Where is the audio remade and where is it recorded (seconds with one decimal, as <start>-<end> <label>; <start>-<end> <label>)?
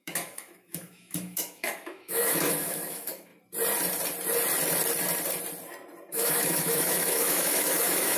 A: 0.0-3.3 remade; 3.3-6.1 recorded; 6.1-8.2 remade